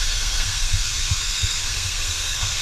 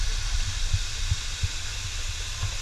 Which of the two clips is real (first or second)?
second